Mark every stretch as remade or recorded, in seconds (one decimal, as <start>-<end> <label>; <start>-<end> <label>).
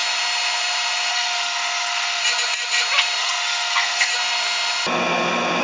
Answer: 0.0-1.1 recorded; 1.1-2.2 remade; 2.2-3.2 recorded; 3.2-4.1 remade; 4.1-5.6 recorded